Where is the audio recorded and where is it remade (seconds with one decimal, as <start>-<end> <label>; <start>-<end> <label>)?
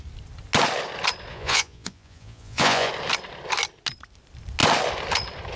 0.0-1.3 recorded; 1.3-2.9 remade; 2.9-5.6 recorded